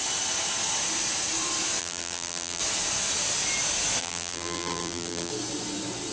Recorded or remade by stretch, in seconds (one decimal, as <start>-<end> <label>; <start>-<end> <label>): 0.0-1.8 recorded; 1.8-2.6 remade; 2.6-4.0 recorded; 4.0-5.3 remade; 5.3-6.1 recorded